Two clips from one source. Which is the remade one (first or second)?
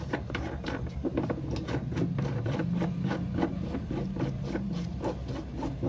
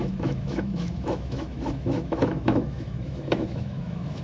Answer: second